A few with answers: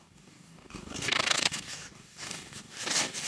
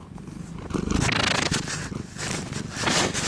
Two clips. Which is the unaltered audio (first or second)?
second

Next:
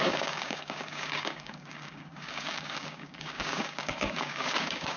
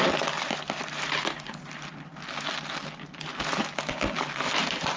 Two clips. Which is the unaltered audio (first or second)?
second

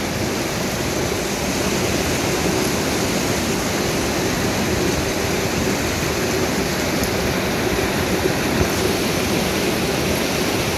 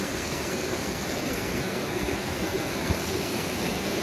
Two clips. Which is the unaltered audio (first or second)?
first